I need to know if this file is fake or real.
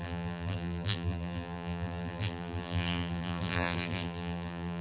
fake